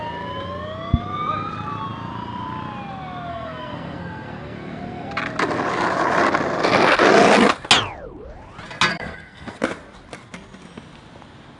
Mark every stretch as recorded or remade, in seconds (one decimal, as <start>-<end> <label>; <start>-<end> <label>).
0.0-3.3 recorded; 3.3-5.1 remade; 5.1-8.9 recorded; 8.9-9.6 remade; 9.6-11.6 recorded

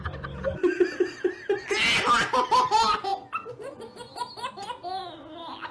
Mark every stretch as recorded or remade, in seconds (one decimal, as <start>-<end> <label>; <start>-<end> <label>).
0.0-5.7 recorded

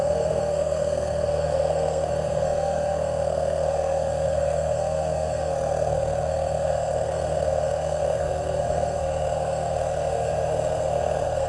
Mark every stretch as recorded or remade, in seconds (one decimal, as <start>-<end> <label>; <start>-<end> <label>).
0.0-11.5 remade